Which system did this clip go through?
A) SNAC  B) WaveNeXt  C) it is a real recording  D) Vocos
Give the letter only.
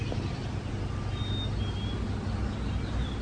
C